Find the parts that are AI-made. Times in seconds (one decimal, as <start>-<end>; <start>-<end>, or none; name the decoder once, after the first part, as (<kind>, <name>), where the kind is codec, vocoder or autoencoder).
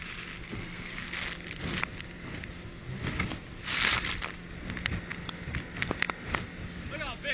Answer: 0.4-1.1 (codec, SNAC)